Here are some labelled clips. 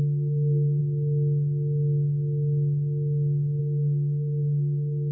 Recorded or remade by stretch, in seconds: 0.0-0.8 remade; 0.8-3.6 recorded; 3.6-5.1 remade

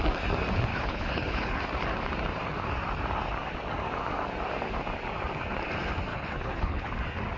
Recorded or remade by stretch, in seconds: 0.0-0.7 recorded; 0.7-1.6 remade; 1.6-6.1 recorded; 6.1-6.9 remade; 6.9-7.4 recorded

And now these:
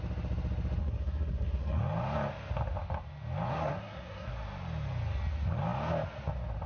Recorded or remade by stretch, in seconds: 0.0-0.8 recorded; 0.8-1.8 remade; 1.8-3.5 recorded; 3.5-4.3 remade; 4.3-6.7 recorded

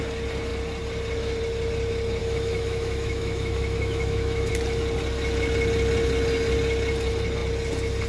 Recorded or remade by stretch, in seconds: 0.0-2.2 recorded; 2.2-4.5 remade; 4.5-8.1 recorded

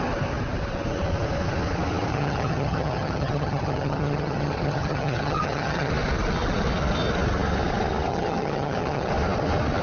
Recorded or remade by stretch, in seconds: 0.0-2.1 recorded; 2.1-5.9 remade; 5.9-8.1 recorded; 8.1-9.1 remade; 9.1-9.8 recorded

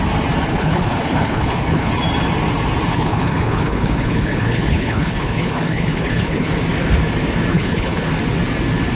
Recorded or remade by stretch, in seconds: 0.0-0.5 recorded; 0.5-1.9 remade; 1.9-2.9 recorded; 2.9-6.5 remade; 6.5-7.5 recorded; 7.5-8.1 remade; 8.1-8.9 recorded

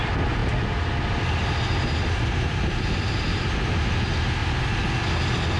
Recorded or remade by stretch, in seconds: 0.0-1.4 recorded; 1.4-2.7 remade; 2.7-5.6 recorded